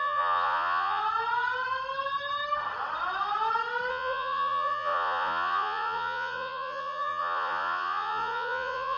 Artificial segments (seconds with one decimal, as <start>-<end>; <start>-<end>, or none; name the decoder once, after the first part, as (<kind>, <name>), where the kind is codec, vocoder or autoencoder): 0.0-1.0 (vocoder, Vocos); 3.9-9.0